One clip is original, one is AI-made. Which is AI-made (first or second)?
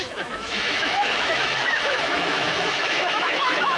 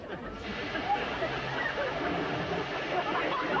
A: first